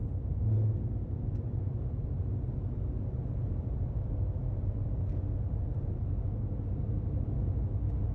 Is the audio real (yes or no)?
yes